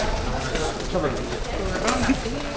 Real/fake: real